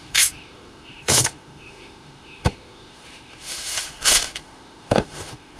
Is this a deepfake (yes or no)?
yes